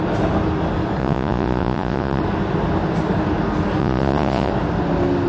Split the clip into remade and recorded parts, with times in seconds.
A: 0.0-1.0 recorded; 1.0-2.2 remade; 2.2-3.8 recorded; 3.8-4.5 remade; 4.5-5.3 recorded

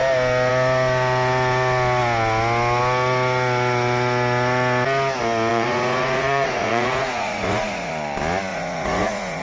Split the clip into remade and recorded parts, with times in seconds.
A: 0.0-5.5 recorded; 5.5-7.9 remade; 7.9-8.5 recorded; 8.5-9.4 remade

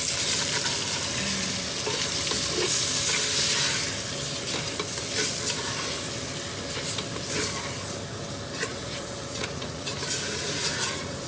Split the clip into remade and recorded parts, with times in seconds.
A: 0.0-8.7 recorded; 8.7-11.3 remade

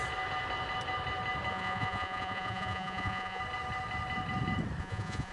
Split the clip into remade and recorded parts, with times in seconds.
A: 0.0-1.5 recorded; 1.5-3.4 remade; 3.4-4.8 recorded; 4.8-5.3 remade